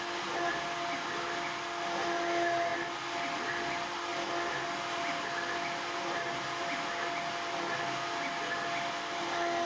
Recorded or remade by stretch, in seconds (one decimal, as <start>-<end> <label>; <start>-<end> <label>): 0.0-9.7 recorded